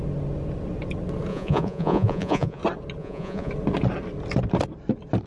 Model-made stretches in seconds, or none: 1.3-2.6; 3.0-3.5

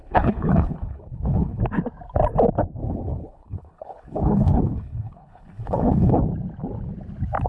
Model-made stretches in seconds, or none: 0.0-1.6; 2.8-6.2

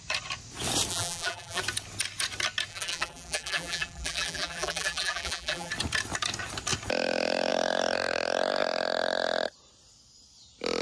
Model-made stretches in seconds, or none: 0.9-1.6; 2.7-5.7